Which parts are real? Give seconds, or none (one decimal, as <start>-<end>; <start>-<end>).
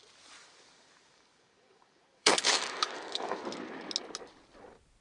0.0-0.4; 3.4-5.0